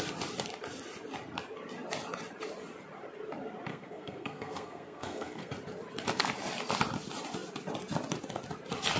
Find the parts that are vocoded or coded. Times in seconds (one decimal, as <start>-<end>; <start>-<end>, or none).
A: 3.7-5.5